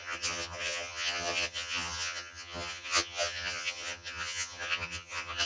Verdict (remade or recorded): remade